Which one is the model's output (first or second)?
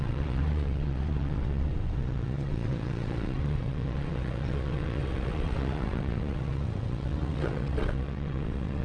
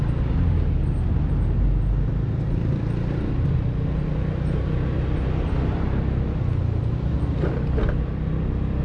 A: first